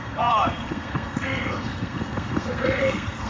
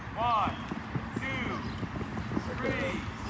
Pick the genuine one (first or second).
second